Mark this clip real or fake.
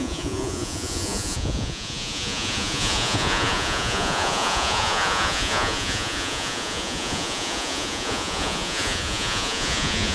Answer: fake